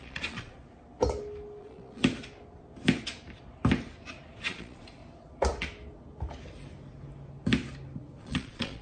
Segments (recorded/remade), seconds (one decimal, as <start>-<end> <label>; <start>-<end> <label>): 0.0-0.6 remade; 0.6-1.6 recorded; 1.6-2.0 remade; 2.0-4.4 recorded; 4.4-5.0 remade; 5.0-8.2 recorded; 8.2-8.8 remade